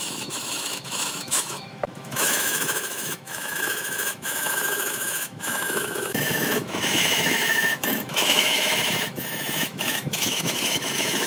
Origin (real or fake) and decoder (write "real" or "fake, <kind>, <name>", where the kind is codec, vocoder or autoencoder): fake, autoencoder, DAC-VAE